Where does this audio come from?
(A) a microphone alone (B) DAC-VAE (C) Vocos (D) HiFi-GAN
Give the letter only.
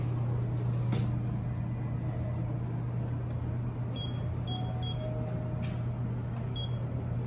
A